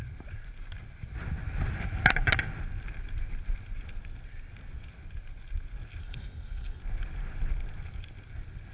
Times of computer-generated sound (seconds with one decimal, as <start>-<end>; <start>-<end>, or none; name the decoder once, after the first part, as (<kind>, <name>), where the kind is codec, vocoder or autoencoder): 6.0-6.8 (codec, SNAC)